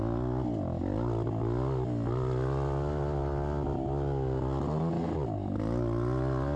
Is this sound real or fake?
real